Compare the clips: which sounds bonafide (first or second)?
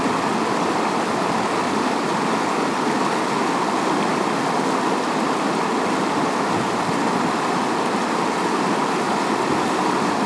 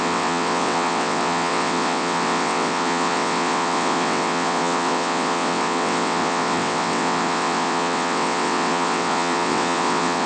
first